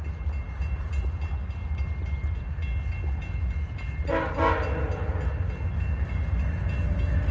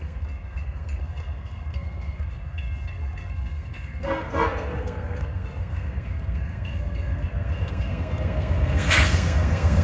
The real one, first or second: first